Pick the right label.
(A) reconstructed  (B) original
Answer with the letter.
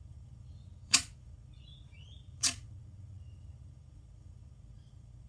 A